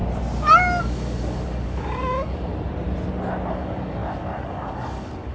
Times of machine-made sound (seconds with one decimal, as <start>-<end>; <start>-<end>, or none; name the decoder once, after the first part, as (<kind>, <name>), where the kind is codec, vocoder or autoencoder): 0.8-2.5 (codec, DAC); 3.5-5.3

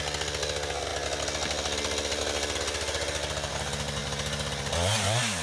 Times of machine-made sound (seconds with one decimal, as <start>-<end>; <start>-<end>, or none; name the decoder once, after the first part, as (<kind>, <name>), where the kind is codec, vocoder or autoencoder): none

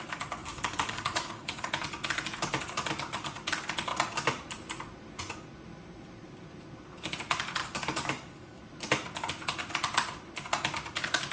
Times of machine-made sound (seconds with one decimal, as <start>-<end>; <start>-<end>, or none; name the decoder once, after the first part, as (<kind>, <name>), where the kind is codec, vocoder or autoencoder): 0.4-1.7 (codec, DAC); 7.6-8.6

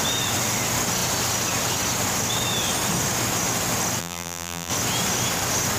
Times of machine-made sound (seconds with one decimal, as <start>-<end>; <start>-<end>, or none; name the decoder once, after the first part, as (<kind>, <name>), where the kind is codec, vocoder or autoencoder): 4.0-4.7 (vocoder, BigVGAN v2)

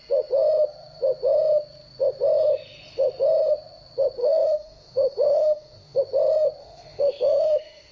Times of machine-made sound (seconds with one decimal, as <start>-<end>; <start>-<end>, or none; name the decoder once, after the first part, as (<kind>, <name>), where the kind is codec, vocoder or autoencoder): 4.2-6.0 (autoencoder, DAC-VAE); 6.6-7.9